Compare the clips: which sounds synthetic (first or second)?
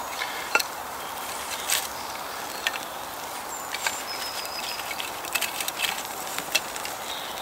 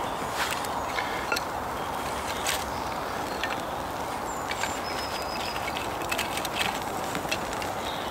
first